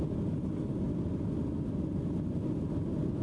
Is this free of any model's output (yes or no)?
yes